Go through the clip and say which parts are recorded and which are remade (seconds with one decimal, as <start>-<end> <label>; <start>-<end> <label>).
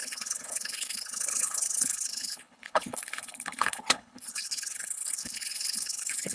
0.0-6.3 remade